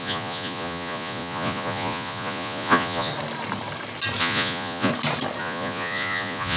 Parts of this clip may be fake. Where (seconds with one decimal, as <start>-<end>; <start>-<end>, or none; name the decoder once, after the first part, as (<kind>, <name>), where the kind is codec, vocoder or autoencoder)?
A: 0.0-3.1 (vocoder, Vocos); 4.2-4.9; 5.4-6.6